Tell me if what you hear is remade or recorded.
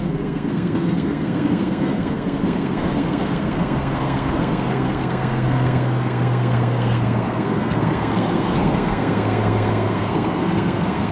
remade